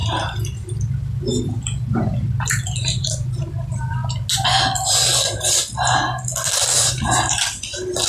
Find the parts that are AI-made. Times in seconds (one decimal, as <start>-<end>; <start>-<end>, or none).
1.4-4.0; 6.5-8.1